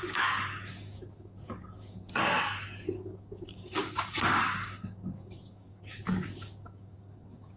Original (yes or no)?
no